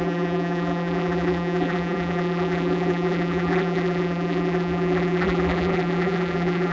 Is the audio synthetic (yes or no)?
yes